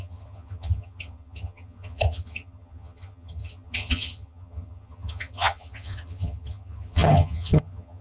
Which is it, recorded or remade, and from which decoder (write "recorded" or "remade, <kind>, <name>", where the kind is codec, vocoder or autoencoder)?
remade, vocoder, HiFi-GAN